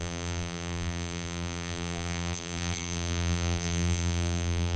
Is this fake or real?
fake